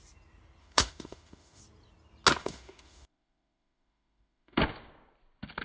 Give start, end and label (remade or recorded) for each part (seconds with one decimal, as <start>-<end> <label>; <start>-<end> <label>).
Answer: 0.0-0.6 recorded; 0.6-1.6 remade; 1.6-2.4 recorded; 2.4-4.6 remade; 4.6-5.6 recorded